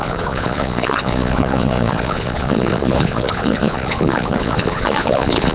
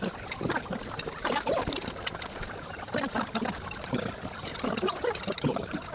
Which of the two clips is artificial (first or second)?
first